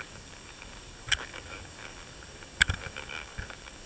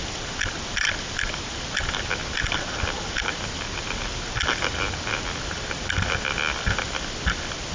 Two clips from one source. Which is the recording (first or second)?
second